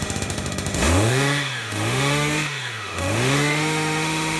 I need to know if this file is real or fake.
fake